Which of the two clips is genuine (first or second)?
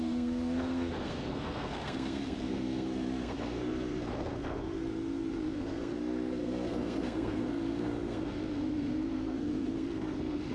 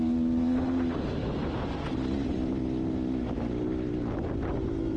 second